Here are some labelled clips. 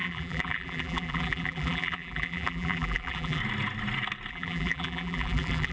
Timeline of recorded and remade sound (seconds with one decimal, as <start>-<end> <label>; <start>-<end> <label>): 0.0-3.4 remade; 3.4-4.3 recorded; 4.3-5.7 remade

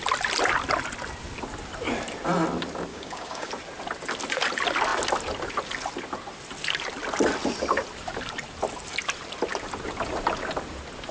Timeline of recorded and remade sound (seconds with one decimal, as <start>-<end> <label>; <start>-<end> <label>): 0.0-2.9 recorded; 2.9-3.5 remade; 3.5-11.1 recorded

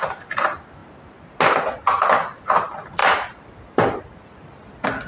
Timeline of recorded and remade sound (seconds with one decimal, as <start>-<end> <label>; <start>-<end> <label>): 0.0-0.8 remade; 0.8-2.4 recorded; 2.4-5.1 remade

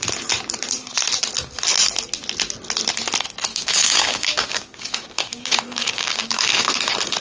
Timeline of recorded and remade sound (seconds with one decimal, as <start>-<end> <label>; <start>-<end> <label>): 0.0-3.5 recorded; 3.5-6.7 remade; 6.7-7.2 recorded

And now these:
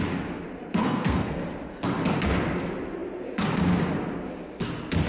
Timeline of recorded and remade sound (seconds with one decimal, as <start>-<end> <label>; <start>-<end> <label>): 0.0-0.8 recorded; 0.8-1.4 remade; 1.4-5.1 recorded